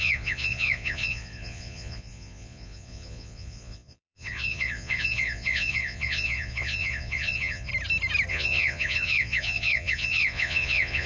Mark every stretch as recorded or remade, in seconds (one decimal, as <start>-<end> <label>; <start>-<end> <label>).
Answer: 0.0-7.7 remade; 7.7-8.3 recorded; 8.3-11.1 remade